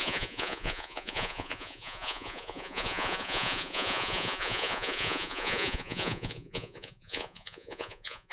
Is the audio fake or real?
fake